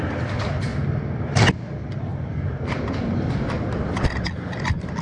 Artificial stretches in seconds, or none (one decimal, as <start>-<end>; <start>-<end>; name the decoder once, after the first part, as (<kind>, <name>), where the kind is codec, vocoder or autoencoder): none